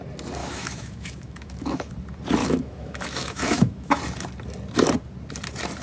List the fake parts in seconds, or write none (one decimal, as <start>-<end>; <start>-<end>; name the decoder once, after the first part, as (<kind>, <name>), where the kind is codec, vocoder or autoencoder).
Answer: 0.4-1.9 (autoencoder, DAC-VAE); 2.4-4.0